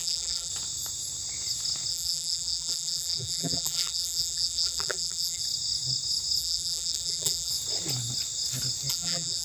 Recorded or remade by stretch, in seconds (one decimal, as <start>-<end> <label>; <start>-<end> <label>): 0.0-0.5 remade; 0.5-1.9 recorded; 1.9-5.4 remade; 5.4-6.4 recorded; 6.4-7.5 remade; 7.5-8.9 recorded; 8.9-9.4 remade